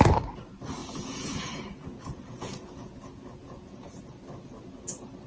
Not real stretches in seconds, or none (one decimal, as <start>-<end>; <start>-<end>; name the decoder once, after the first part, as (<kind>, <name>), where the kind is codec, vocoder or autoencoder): 0.8-2.9 (vocoder, Vocos); 3.4-4.1